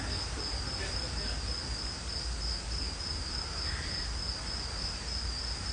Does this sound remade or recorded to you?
recorded